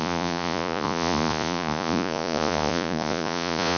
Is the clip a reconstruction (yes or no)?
yes